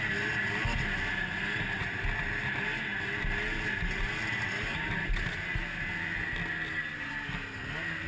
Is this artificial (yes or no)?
no